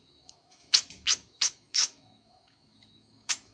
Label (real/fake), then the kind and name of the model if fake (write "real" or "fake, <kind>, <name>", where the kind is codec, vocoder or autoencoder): fake, autoencoder, DAC-VAE